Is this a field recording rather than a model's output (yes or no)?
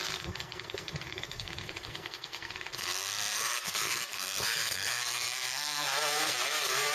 no